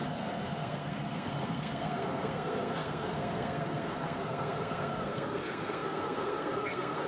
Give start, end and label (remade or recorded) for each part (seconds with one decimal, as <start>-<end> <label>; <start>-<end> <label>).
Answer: 0.0-7.1 remade

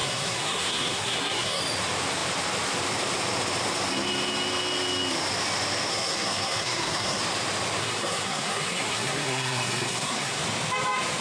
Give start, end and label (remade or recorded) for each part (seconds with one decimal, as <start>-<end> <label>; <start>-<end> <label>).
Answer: 0.0-1.6 remade; 1.6-5.9 recorded; 5.9-7.2 remade; 7.2-7.8 recorded; 7.8-10.4 remade; 10.4-11.2 recorded